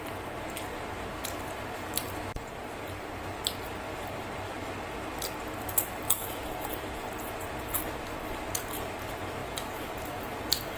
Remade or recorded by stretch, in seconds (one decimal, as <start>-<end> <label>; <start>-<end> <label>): 0.0-1.1 recorded; 1.1-3.5 remade; 3.5-9.4 recorded; 9.4-10.8 remade